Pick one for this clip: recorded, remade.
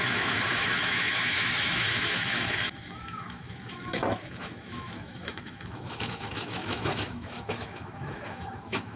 remade